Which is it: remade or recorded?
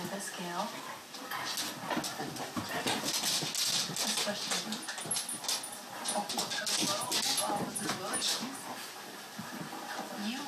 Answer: recorded